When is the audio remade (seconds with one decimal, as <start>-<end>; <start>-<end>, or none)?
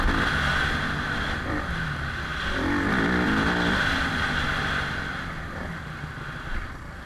none